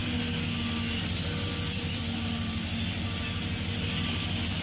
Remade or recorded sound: recorded